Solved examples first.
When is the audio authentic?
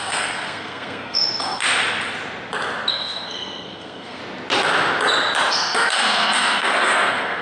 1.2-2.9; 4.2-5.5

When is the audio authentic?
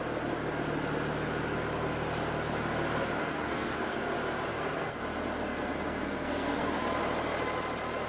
0.0-3.2; 4.0-4.5; 5.0-5.5; 6.8-8.1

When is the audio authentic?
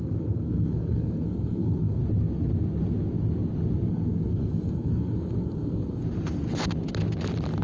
2.0-3.9; 6.0-7.6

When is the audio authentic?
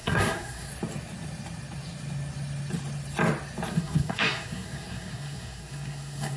0.7-3.7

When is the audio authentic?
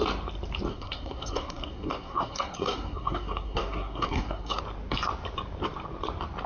0.0-0.7; 4.6-6.5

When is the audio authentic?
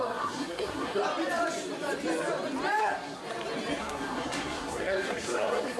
1.0-2.8; 3.2-3.8